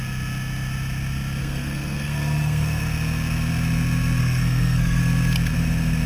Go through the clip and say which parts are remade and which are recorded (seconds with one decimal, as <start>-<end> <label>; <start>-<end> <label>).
0.0-1.4 recorded; 1.4-2.8 remade; 2.8-4.2 recorded; 4.2-5.0 remade; 5.0-6.1 recorded

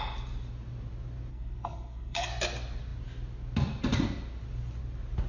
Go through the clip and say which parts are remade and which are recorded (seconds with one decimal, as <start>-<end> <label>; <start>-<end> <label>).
0.0-1.3 recorded; 1.3-2.3 remade; 2.3-5.3 recorded

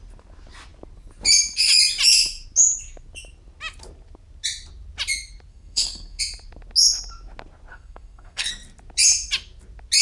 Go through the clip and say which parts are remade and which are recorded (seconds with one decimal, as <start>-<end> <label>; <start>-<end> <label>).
0.0-5.5 recorded; 5.5-6.2 remade; 6.2-7.7 recorded; 7.7-8.5 remade; 8.5-10.0 recorded

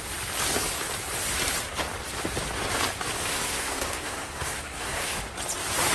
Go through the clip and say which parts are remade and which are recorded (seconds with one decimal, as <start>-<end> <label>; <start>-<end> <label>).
0.0-3.3 recorded; 3.3-5.2 remade; 5.2-5.9 recorded

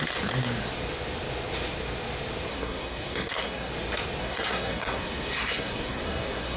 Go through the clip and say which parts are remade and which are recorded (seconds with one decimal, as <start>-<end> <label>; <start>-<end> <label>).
0.0-2.5 recorded; 2.5-3.7 remade; 3.7-4.2 recorded; 4.2-6.6 remade